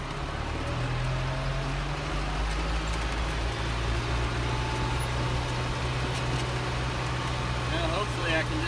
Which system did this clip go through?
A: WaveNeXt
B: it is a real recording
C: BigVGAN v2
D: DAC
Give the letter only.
B